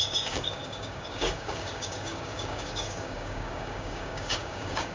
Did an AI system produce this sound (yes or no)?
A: yes